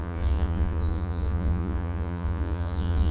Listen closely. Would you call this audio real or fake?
fake